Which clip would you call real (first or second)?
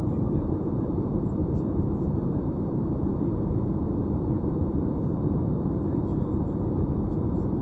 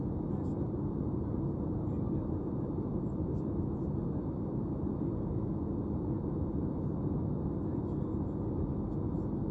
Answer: second